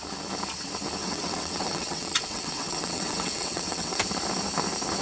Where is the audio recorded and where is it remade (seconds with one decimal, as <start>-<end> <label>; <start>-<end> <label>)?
0.0-1.0 recorded; 1.0-4.0 remade; 4.0-5.0 recorded